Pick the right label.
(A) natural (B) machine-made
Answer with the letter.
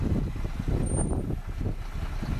A